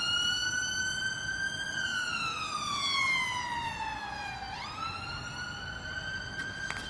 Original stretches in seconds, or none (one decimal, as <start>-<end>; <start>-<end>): 0.0-6.9